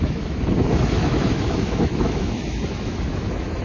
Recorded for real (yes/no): no